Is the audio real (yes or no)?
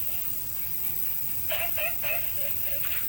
no